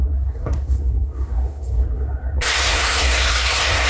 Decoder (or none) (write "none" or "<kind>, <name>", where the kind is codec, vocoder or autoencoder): codec, SNAC